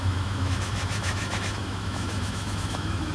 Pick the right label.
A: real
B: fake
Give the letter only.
B